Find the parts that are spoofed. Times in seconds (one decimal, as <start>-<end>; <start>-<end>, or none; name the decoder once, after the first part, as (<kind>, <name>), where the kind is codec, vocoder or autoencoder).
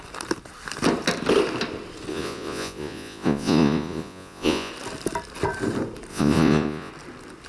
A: 2.1-4.7 (vocoder, Vocos); 6.1-6.9